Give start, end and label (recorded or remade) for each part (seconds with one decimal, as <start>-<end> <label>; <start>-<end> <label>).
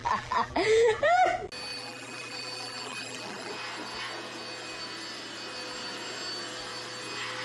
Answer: 0.0-1.2 remade; 1.2-1.7 recorded; 1.7-3.5 remade; 3.5-7.4 recorded